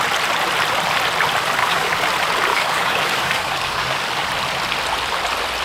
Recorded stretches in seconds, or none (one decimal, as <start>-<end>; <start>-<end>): 0.0-1.6; 2.1-2.5; 4.3-5.6